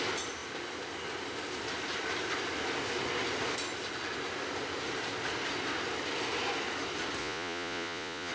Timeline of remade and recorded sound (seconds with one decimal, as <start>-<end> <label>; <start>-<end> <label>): 0.0-7.2 recorded; 7.2-8.3 remade